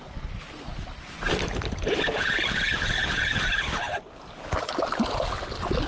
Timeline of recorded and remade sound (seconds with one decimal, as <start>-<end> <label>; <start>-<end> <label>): 0.0-5.9 recorded